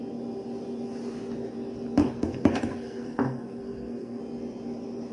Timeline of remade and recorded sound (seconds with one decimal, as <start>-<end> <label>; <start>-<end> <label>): 0.0-2.0 recorded; 2.0-4.2 remade; 4.2-5.1 recorded